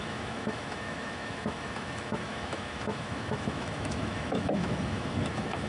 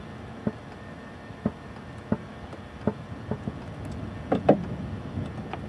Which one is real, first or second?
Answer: second